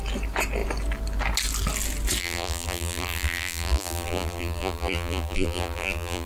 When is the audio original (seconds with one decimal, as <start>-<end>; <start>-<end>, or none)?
0.0-2.2